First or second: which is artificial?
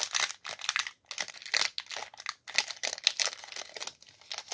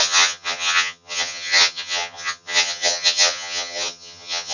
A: second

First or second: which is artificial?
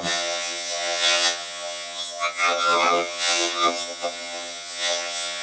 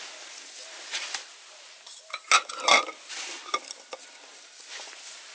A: first